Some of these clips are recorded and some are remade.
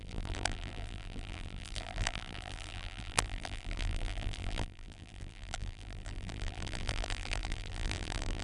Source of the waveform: remade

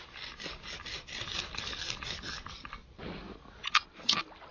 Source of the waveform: recorded